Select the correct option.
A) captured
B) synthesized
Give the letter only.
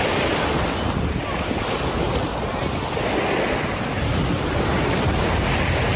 A